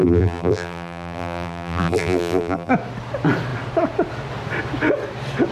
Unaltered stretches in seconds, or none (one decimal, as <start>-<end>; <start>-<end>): 2.7-5.5